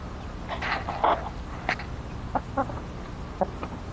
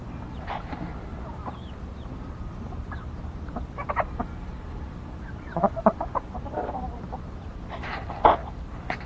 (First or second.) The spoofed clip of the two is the second